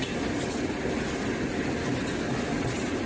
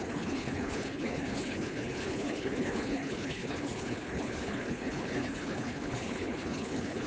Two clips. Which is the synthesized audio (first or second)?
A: second